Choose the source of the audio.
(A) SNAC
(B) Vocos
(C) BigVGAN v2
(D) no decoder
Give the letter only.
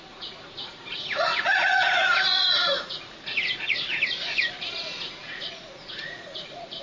B